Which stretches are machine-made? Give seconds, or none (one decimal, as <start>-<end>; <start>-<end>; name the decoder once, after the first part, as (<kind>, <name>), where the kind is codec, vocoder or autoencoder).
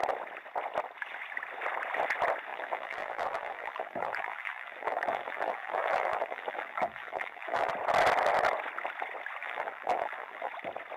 2.5-7.7 (vocoder, BigVGAN v2); 9.4-10.5